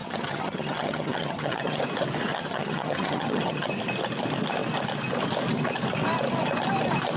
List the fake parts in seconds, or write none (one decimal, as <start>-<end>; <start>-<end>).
0.0-1.8; 2.3-3.7